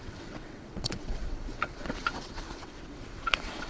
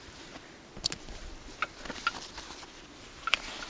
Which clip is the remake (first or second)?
first